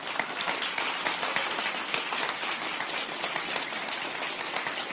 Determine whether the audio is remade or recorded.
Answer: recorded